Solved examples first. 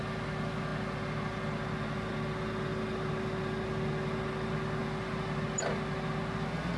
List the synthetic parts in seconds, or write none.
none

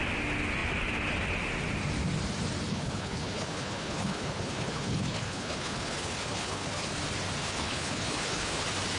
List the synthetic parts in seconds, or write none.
2.7-6.9; 7.4-8.6

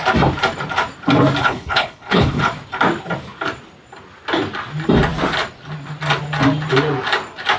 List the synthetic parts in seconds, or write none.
1.4-2.4

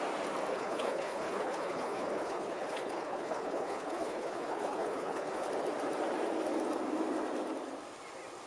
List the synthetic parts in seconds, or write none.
0.5-5.5

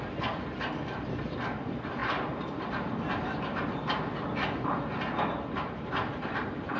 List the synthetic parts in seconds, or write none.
none